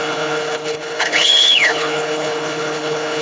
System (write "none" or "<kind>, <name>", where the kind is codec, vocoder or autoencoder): codec, HILCodec